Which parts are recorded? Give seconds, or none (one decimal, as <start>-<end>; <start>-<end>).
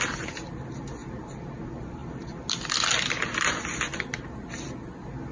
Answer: 0.0-1.0; 1.6-5.3